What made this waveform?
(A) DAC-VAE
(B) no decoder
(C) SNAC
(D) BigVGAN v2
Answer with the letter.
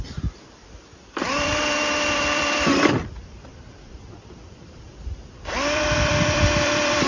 D